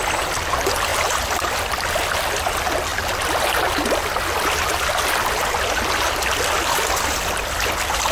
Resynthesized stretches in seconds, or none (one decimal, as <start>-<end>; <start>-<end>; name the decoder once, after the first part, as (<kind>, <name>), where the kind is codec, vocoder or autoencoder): none